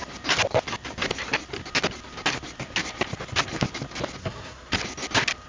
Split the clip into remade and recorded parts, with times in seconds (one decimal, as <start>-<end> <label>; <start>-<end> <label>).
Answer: 0.0-4.2 recorded; 4.2-4.7 remade; 4.7-5.5 recorded